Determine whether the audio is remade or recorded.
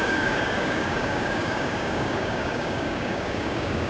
remade